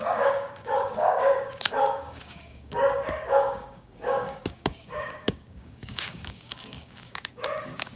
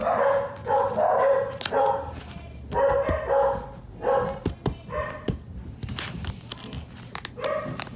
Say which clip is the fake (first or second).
first